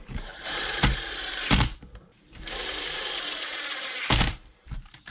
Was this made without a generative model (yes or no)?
no